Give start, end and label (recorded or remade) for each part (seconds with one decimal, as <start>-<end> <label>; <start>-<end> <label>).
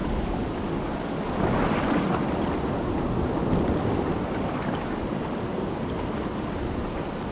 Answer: 0.0-0.6 remade; 0.6-7.3 recorded